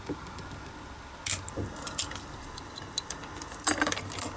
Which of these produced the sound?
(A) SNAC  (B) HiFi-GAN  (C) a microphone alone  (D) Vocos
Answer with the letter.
C